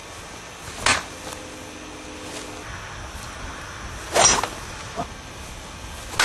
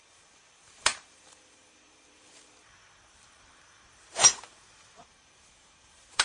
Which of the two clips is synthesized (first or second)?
second